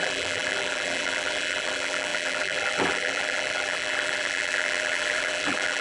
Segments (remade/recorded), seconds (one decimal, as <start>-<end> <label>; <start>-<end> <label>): 0.0-5.8 remade